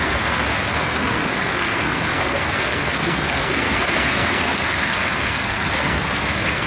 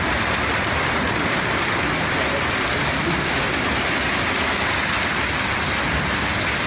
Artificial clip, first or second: first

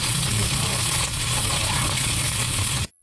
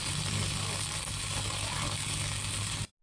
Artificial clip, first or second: first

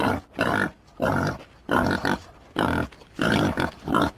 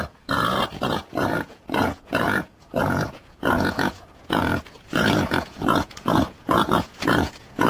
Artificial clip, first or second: second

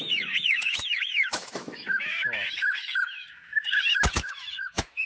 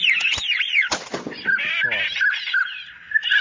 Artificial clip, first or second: first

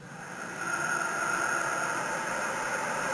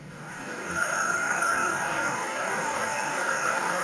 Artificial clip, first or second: second